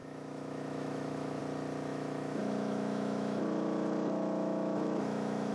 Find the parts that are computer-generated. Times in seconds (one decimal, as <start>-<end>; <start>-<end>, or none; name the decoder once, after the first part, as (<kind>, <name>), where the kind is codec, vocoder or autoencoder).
0.0-1.4 (autoencoder, DAC-VAE); 1.9-5.5